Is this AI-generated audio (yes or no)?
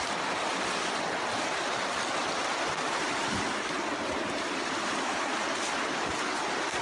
no